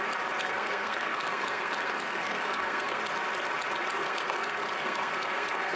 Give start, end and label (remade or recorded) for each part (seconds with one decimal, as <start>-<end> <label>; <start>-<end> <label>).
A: 0.0-0.4 recorded; 0.4-3.0 remade; 3.0-4.0 recorded; 4.0-5.8 remade